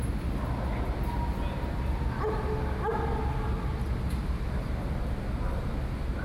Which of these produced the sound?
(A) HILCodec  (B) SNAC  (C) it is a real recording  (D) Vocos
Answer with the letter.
C